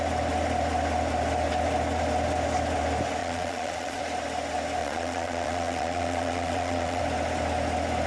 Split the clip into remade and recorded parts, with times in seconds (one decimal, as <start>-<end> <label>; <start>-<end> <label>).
0.0-3.2 recorded; 3.2-4.0 remade; 4.0-4.8 recorded; 4.8-7.0 remade; 7.0-8.1 recorded